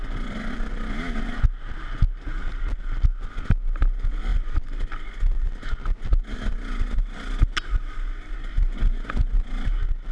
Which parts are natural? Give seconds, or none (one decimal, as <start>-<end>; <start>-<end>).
0.0-10.1